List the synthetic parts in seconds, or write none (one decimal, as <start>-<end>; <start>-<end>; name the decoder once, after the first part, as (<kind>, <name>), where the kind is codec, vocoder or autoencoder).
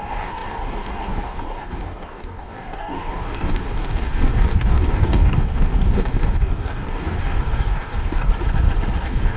0.0-8.3 (codec, DAC); 9.0-9.4